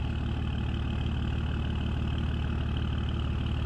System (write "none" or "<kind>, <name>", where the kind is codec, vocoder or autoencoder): none